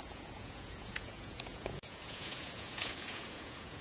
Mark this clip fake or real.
fake